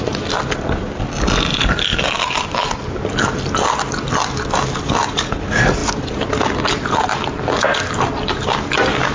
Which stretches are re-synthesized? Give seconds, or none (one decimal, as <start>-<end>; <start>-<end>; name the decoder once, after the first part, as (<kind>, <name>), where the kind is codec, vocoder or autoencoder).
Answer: none